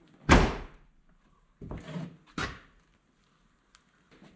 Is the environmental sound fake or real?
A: real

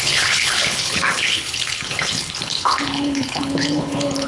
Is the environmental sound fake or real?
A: fake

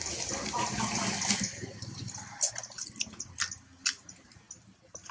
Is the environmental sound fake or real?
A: real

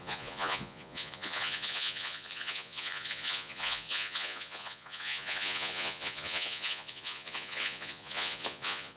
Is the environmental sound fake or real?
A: fake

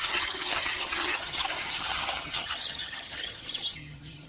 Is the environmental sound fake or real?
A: fake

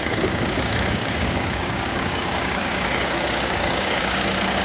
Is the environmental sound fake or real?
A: fake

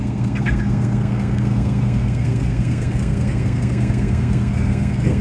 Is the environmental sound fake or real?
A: fake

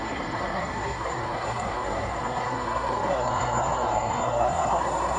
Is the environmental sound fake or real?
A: fake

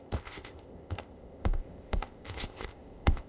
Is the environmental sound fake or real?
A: fake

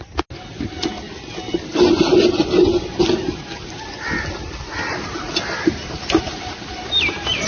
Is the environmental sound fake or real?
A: real